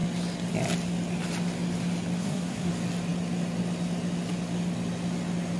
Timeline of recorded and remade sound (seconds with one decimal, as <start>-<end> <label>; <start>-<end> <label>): 0.0-2.2 recorded; 2.2-2.7 remade; 2.7-5.6 recorded